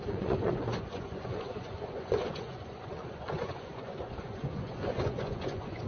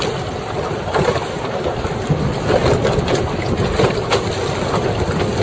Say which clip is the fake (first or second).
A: first